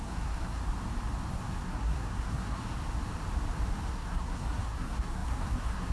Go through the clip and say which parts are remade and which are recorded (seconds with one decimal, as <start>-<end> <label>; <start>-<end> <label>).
0.0-0.6 remade; 0.6-1.3 recorded; 1.3-2.6 remade; 2.6-3.9 recorded; 3.9-5.9 remade